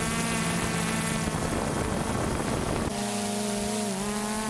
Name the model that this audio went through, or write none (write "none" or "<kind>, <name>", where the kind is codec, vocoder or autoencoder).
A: none